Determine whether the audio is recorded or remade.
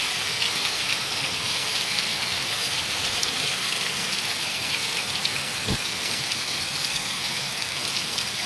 remade